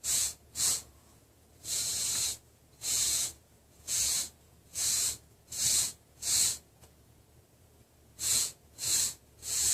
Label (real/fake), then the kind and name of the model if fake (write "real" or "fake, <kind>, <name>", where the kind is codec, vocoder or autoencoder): fake, vocoder, Vocos